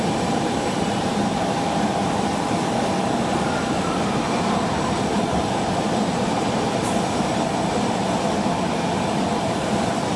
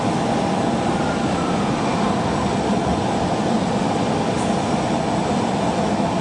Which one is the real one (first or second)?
second